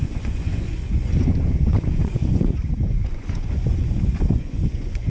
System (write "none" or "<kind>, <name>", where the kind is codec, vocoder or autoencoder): vocoder, Vocos